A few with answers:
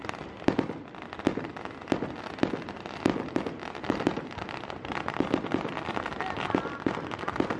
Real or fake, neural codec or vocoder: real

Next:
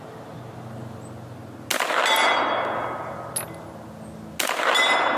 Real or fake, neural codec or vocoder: real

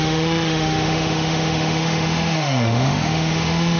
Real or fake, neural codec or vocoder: fake, autoencoder, DAC-VAE